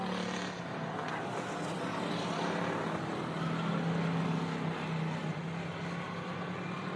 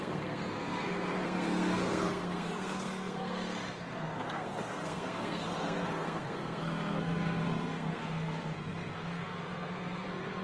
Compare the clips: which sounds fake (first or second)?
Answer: second